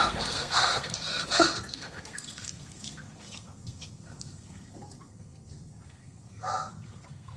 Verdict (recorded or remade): remade